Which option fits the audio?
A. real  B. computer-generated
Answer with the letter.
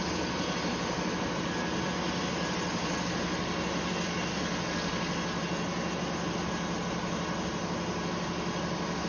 A